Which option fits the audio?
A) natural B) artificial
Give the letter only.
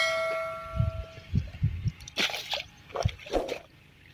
A